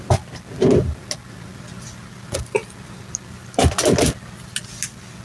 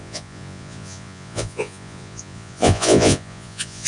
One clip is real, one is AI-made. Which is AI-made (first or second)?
second